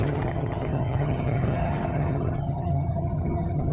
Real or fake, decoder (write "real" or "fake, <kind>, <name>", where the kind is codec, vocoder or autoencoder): fake, vocoder, HiFi-GAN